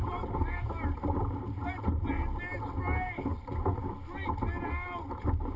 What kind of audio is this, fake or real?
real